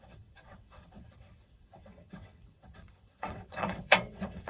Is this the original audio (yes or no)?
no